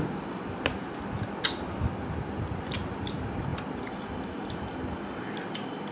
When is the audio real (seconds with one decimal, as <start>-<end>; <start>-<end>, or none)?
0.0-5.9